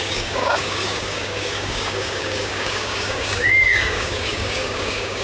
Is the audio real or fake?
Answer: fake